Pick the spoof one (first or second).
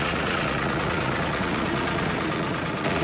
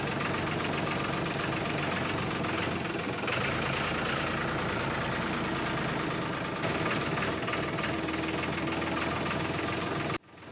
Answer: first